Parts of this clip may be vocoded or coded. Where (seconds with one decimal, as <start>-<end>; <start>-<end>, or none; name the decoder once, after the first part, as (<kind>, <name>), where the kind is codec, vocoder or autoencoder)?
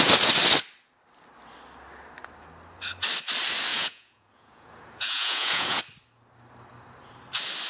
3.7-5.8 (vocoder, Vocos)